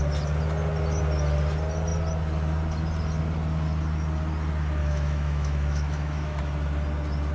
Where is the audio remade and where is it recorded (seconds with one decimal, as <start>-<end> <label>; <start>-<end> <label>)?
0.0-4.8 recorded; 4.8-6.4 remade; 6.4-7.3 recorded